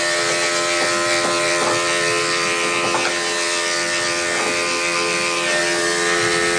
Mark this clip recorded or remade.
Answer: remade